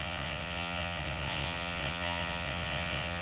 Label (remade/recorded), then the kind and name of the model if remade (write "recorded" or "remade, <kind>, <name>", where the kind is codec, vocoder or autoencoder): remade, vocoder, WaveNeXt